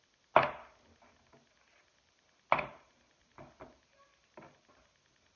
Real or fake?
real